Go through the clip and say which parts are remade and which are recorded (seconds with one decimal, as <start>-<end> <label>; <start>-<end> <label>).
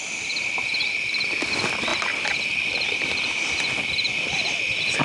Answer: 0.0-5.0 recorded